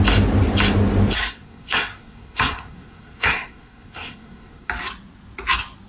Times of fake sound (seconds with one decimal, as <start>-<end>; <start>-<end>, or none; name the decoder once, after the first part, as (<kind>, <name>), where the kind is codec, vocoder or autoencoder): 1.2-4.7 (codec, SNAC)